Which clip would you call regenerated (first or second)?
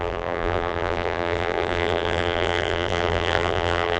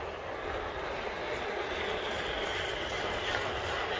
first